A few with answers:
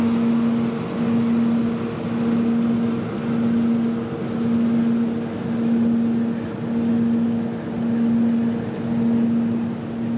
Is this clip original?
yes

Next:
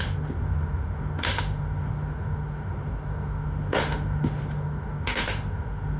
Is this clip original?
no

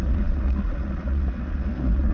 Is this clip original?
no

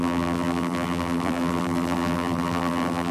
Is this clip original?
no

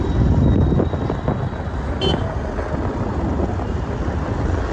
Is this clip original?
yes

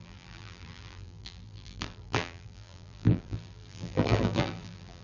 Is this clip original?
no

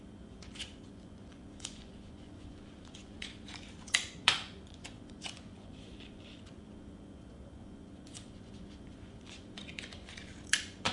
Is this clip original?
no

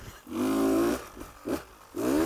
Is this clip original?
yes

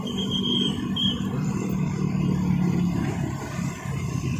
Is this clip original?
yes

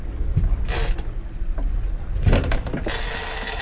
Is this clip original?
yes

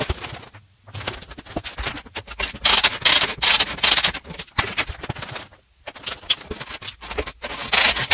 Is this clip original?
yes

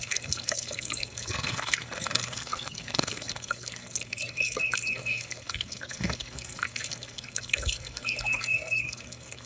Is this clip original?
no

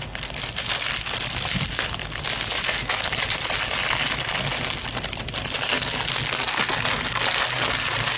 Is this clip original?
yes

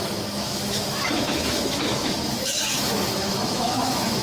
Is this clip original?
no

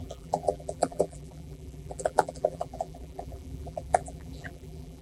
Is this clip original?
no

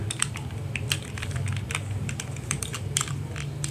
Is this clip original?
no